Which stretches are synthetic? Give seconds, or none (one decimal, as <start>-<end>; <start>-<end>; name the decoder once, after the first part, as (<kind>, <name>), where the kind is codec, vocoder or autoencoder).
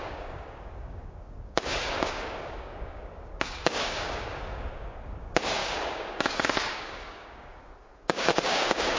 0.0-9.0 (codec, DAC)